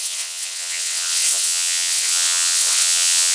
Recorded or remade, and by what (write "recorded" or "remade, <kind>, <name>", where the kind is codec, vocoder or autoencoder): remade, vocoder, WaveNeXt